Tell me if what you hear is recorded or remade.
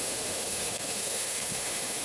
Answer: remade